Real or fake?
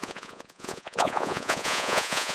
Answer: fake